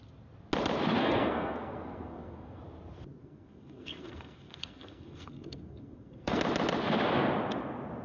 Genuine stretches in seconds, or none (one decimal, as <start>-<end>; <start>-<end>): 0.0-1.0; 2.6-3.2; 6.4-8.0